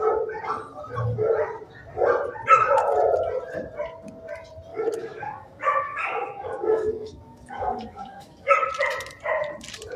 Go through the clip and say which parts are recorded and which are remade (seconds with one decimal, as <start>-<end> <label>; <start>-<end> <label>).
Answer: 0.0-4.7 recorded; 4.7-8.7 remade; 8.7-10.0 recorded